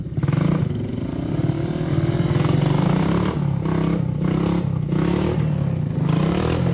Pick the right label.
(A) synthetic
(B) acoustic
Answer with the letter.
B